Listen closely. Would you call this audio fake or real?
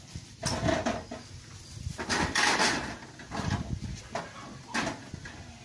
real